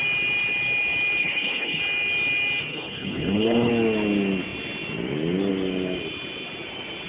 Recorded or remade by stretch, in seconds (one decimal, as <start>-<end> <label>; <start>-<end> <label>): 0.0-1.2 recorded; 1.2-1.8 remade; 1.8-2.7 recorded; 2.7-3.7 remade; 3.7-7.1 recorded